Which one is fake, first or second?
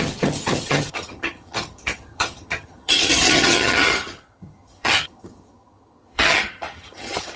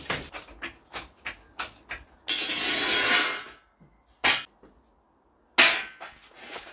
first